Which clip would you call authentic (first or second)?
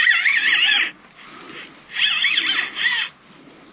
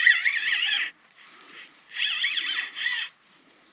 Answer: first